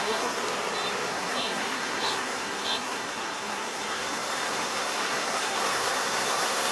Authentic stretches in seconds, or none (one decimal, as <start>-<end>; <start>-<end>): 0.4-1.1

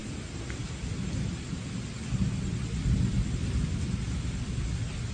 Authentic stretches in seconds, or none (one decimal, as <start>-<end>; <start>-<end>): 0.0-5.1

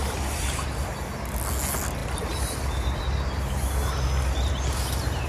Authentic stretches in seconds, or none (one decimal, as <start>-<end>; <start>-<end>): 0.0-5.3

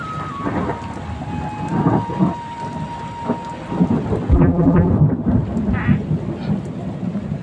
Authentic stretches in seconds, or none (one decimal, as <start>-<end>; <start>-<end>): 0.0-4.3; 4.9-7.4